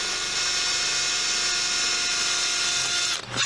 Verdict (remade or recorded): recorded